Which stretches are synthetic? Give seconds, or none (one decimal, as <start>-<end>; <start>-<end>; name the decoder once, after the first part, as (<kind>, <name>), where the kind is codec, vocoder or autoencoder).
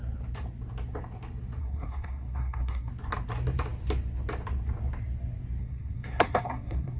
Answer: 1.6-2.9 (codec, SNAC); 5.6-7.0